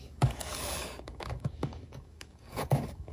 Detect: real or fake fake